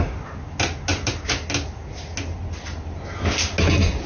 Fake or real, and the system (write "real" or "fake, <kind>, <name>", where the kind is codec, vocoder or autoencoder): real